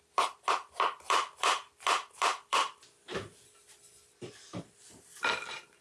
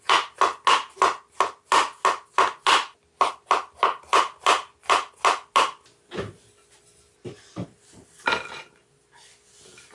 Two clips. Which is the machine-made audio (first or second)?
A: first